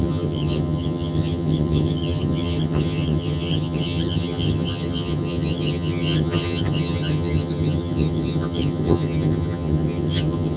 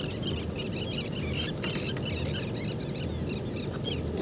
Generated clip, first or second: first